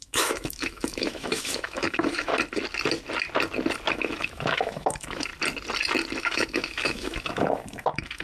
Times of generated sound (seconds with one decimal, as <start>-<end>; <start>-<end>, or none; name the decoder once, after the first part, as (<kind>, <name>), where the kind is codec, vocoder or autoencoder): 0.0-2.3 (autoencoder, DAC-VAE); 3.9-5.3; 6.2-8.2